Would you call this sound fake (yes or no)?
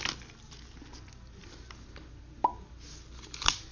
no